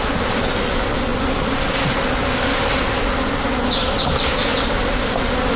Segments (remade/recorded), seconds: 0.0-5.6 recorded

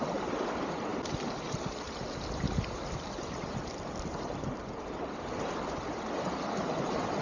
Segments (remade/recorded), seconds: 0.0-7.2 remade